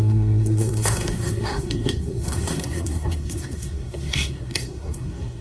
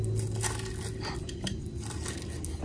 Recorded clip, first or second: second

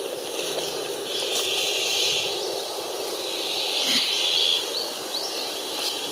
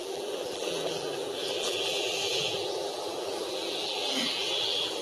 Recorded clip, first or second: first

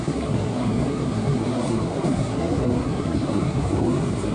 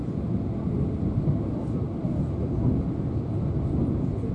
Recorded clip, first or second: second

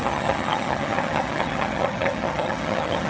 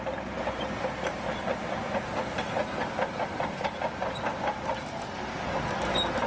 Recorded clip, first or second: second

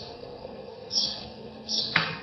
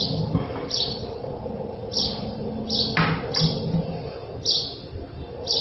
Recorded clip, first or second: second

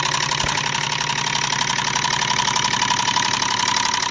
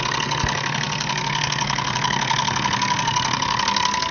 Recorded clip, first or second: first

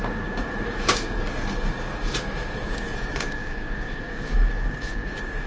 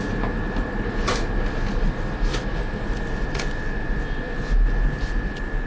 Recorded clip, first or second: second